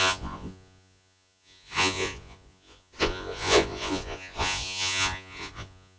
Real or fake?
fake